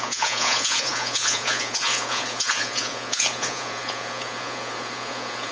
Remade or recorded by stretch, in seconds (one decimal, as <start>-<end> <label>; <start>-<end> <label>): 0.0-5.5 remade